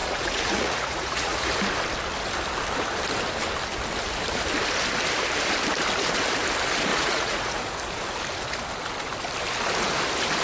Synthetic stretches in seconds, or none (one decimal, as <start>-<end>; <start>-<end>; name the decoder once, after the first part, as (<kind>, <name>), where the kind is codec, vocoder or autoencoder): 0.0-1.5 (vocoder, Vocos); 6.9-7.7